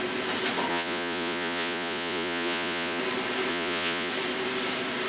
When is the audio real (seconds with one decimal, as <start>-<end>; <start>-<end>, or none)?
0.0-0.7; 3.0-3.5; 4.1-5.1